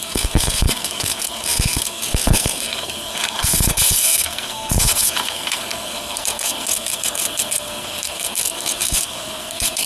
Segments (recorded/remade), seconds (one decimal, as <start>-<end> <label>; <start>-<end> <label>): 0.0-9.9 remade

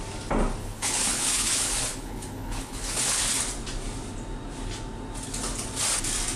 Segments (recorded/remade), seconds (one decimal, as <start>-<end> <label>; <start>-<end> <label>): 0.0-0.6 recorded; 0.6-3.2 remade; 3.2-6.4 recorded